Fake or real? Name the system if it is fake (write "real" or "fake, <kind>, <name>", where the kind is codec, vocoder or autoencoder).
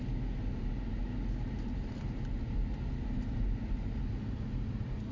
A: real